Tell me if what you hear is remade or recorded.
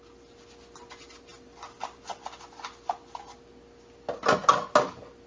recorded